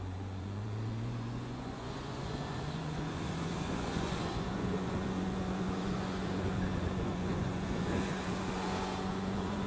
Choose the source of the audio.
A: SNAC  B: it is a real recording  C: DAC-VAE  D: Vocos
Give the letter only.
D